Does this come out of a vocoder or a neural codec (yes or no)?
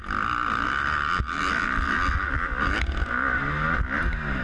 no